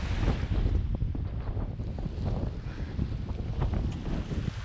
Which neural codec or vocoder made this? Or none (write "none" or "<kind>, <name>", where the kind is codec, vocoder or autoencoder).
none